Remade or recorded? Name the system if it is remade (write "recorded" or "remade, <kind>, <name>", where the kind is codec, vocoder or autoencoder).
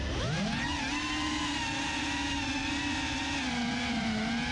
recorded